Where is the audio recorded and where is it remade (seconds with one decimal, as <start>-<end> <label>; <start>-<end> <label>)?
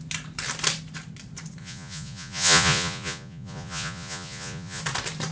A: 0.0-1.6 recorded; 1.6-4.8 remade; 4.8-5.3 recorded